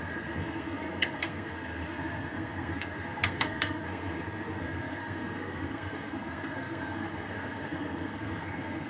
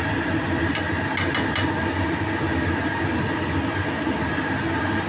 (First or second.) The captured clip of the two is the second